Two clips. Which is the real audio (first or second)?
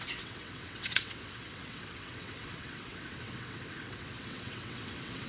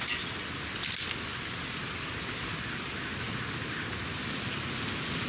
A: second